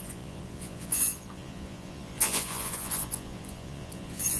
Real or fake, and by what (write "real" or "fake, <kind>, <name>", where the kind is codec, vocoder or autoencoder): fake, vocoder, Vocos